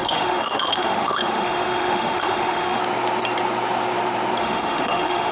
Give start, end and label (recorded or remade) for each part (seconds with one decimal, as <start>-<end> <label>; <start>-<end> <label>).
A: 0.0-2.8 remade; 2.8-4.4 recorded; 4.4-5.3 remade